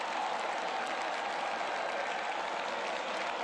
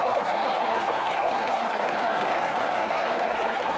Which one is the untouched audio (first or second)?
first